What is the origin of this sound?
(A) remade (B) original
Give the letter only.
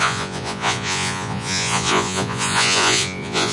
A